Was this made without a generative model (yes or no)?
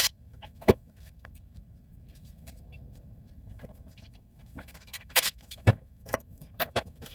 no